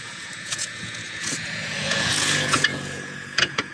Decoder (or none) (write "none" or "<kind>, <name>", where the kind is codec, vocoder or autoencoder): vocoder, Vocos